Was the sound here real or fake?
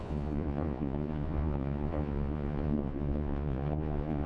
fake